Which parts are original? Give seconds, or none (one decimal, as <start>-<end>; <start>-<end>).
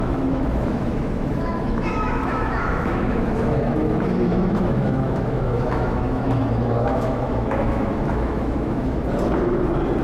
9.0-10.0